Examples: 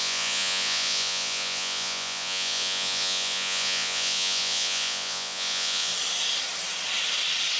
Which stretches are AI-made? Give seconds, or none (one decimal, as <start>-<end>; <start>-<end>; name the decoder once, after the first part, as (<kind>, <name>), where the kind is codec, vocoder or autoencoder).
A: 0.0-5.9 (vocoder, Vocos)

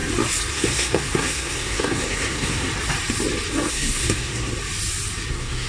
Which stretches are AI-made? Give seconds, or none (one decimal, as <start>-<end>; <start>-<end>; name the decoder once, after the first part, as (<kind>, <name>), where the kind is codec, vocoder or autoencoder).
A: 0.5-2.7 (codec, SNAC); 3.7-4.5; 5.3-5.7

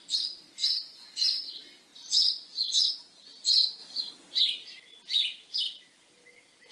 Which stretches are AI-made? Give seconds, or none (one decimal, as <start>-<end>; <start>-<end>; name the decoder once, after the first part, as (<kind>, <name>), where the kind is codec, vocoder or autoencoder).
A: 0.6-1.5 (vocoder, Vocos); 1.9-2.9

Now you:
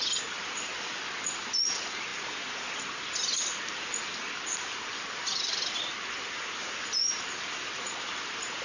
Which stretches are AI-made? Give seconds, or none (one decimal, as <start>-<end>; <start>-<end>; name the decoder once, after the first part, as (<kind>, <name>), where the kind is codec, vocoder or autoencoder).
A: none

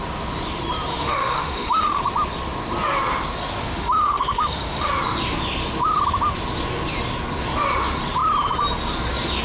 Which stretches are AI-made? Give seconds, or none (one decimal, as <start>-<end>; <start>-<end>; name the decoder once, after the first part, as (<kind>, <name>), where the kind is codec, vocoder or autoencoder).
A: 0.9-2.0 (autoencoder, DAC-VAE); 3.6-4.9